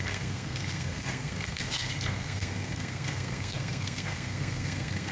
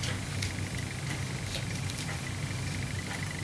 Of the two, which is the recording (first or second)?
second